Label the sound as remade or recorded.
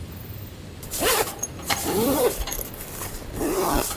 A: remade